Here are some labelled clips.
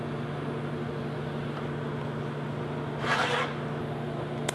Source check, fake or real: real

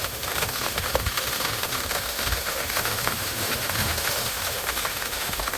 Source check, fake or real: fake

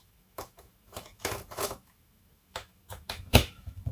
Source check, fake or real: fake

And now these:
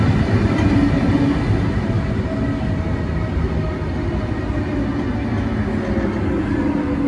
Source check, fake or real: real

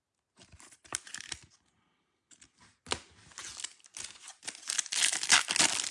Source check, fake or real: real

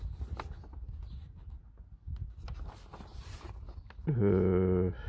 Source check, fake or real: real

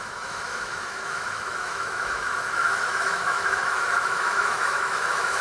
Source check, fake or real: fake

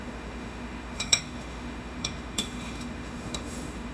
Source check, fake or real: fake